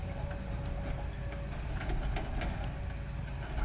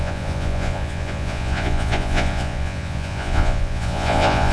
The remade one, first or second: second